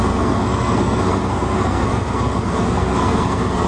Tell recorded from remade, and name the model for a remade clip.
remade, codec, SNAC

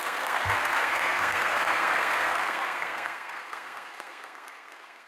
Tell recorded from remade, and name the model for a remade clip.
remade, codec, SNAC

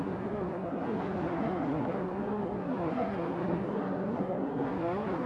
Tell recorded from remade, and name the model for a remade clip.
remade, codec, SNAC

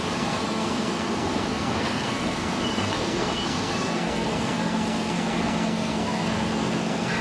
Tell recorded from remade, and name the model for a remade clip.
remade, codec, SNAC